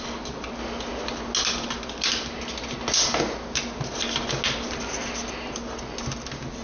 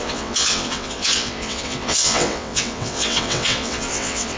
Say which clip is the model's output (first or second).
second